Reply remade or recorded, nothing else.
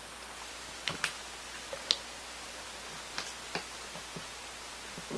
recorded